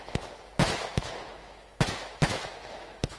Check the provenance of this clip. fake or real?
fake